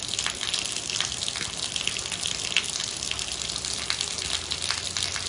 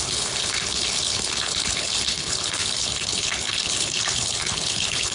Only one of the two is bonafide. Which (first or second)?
first